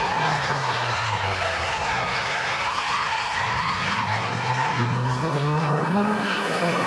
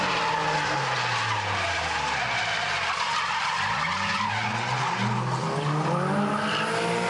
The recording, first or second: second